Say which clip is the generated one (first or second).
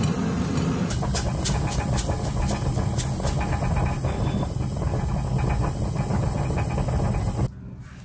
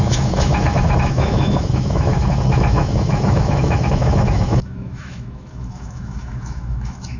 second